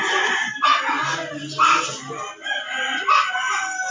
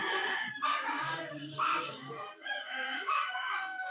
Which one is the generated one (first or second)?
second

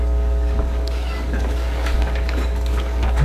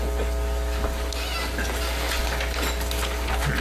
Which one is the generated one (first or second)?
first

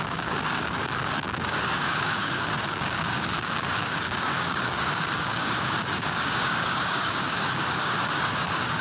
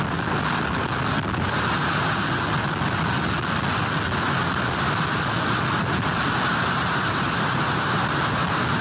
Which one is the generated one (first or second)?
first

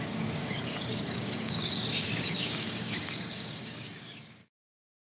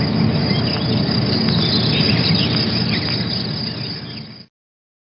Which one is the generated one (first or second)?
first